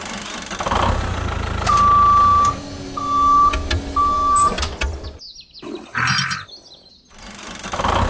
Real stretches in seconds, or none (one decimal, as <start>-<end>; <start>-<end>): 0.0-8.1